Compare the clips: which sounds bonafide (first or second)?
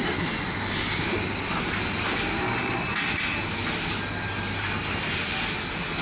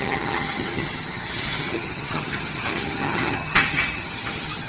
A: first